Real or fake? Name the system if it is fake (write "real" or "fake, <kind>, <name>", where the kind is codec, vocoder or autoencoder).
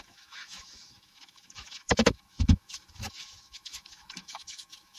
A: fake, autoencoder, DAC-VAE